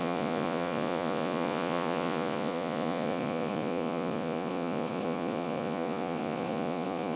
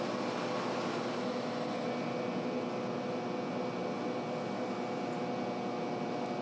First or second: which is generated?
first